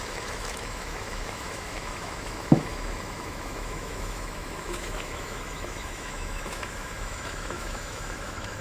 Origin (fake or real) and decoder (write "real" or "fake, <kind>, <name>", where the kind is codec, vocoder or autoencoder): fake, autoencoder, DAC-VAE